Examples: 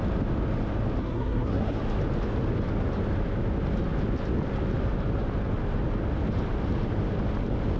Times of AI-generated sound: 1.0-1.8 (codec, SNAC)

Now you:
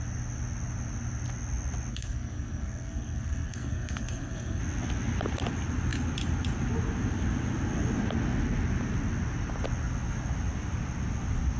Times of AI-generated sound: 1.9-4.6 (codec, SNAC)